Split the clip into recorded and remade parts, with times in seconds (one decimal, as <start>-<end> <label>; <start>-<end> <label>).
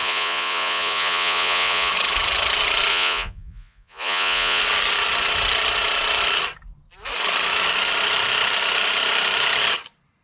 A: 0.0-1.9 remade; 1.9-2.9 recorded; 2.9-4.6 remade; 4.6-10.2 recorded